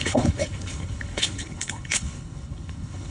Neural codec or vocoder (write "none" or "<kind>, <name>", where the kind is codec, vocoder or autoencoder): codec, HILCodec